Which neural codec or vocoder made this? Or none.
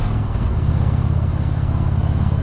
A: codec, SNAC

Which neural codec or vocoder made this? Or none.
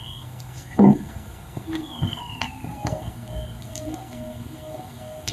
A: codec, SNAC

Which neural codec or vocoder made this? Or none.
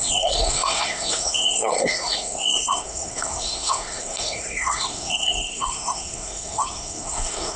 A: codec, SNAC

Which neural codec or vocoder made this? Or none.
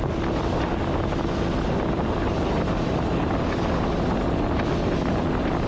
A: none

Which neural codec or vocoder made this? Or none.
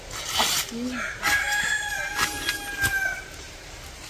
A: none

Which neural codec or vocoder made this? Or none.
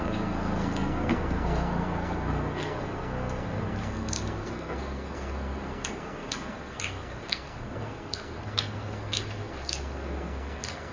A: codec, SNAC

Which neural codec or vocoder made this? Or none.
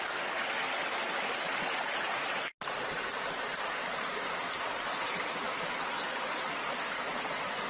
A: none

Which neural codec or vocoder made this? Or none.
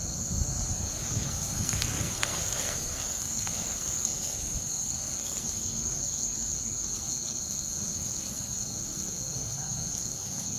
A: codec, SNAC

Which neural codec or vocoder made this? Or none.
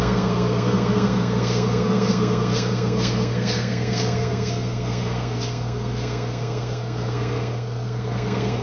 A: codec, SNAC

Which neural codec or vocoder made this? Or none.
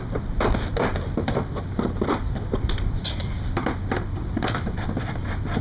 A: none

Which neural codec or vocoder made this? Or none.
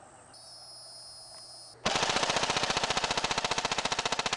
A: none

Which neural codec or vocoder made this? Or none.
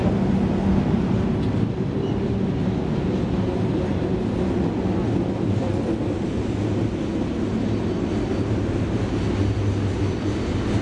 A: none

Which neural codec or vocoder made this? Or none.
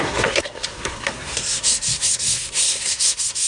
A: codec, SNAC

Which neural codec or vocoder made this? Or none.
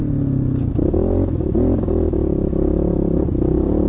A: none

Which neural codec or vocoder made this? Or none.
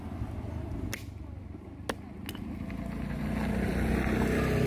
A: none